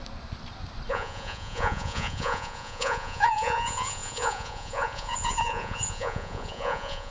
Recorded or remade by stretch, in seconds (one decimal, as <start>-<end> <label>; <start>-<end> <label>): 0.0-0.9 recorded; 0.9-7.1 remade